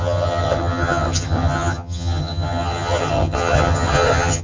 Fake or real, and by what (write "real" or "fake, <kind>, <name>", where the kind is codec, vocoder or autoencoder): fake, vocoder, HiFi-GAN